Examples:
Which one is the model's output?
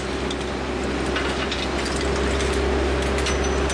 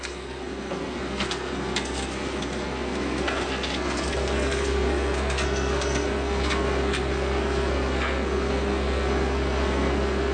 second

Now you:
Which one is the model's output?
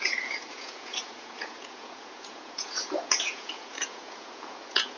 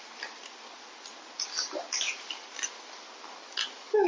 first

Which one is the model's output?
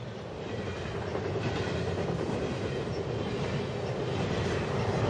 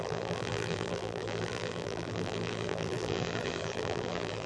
second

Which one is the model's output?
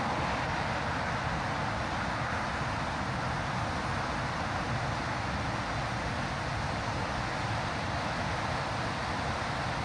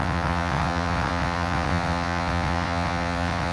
second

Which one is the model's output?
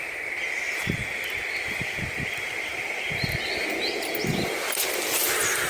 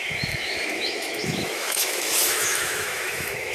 second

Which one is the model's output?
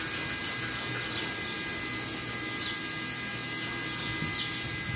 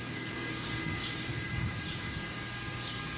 second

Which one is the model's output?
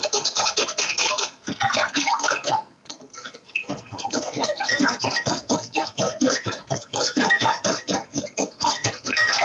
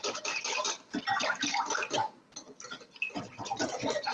first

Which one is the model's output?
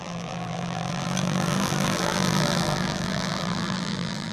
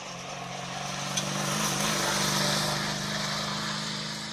first